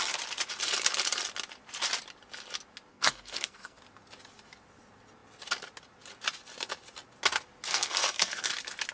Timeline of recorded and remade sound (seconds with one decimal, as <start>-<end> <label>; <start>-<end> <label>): 0.0-2.9 recorded; 2.9-3.8 remade; 3.8-7.7 recorded; 7.7-8.5 remade; 8.5-8.9 recorded